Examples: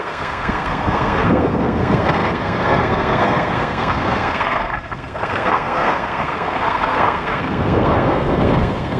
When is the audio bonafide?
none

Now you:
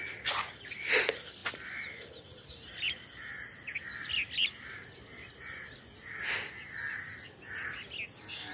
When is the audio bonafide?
0.0-8.5

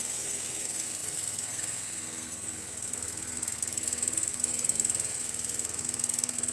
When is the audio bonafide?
none

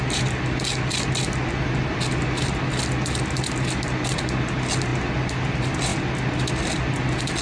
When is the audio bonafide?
0.0-7.4

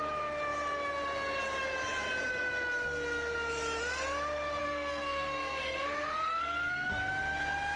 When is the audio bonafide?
0.0-4.6; 6.9-7.8

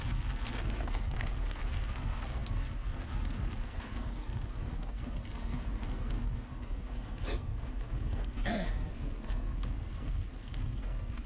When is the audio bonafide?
none